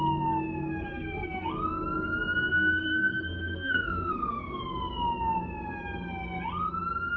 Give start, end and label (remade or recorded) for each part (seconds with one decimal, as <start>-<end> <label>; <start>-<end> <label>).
0.0-0.9 recorded; 0.9-1.5 remade; 1.5-2.5 recorded; 2.5-4.6 remade; 4.6-7.2 recorded